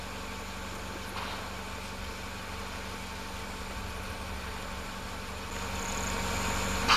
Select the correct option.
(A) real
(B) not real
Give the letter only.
A